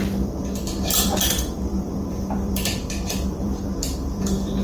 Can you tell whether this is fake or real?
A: fake